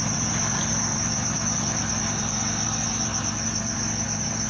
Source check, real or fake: real